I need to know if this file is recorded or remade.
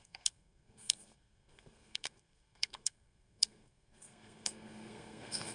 remade